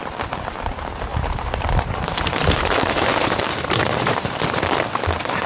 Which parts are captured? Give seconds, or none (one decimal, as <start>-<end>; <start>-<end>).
0.0-1.1; 4.4-5.5